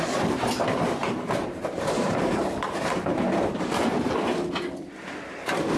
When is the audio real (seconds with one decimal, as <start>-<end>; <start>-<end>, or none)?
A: 0.0-1.0; 3.6-5.8